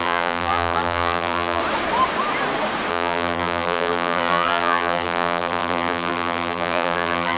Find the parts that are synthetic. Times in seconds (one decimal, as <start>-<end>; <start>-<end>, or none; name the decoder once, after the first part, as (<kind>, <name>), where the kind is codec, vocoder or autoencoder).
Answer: 0.0-1.6 (vocoder, BigVGAN v2); 2.9-7.4